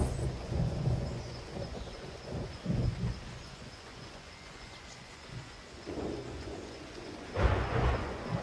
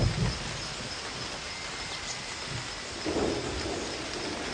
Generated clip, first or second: first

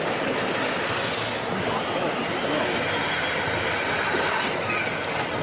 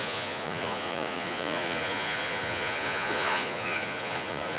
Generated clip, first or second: second